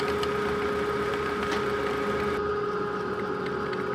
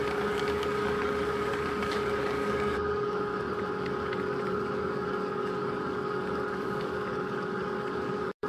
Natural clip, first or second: first